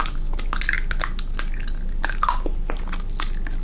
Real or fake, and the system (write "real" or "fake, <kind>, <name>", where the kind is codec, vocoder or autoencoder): real